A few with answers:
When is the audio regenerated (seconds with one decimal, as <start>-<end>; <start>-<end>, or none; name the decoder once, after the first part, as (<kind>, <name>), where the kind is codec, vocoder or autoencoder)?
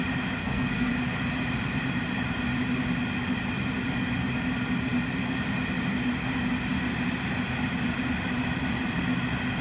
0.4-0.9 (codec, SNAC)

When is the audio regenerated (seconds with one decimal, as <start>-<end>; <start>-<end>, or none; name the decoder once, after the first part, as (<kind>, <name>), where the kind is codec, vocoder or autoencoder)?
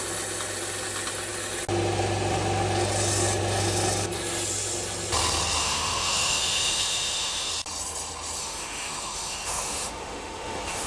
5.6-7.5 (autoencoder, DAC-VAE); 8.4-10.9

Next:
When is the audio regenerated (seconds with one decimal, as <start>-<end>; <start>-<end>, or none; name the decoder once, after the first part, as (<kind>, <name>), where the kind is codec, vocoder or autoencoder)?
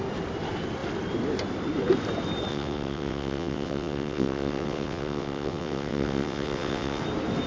2.5-7.0 (vocoder, WaveNeXt)